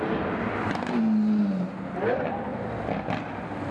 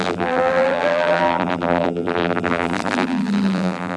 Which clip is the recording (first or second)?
first